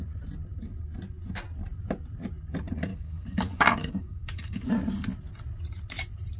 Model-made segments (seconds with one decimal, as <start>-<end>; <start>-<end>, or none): 2.9-4.7